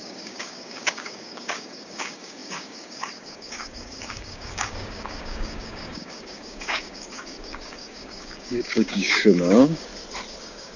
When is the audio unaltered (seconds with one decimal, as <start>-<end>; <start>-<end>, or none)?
9.9-10.4